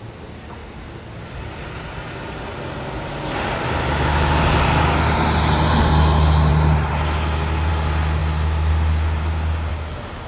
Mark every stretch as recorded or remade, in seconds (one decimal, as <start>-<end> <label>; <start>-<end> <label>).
0.0-10.3 recorded